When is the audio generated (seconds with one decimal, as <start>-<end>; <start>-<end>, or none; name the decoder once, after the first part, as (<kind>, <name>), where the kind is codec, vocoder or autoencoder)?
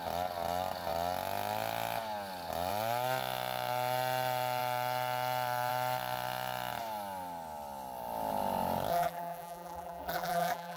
8.9-10.8 (vocoder, BigVGAN v2)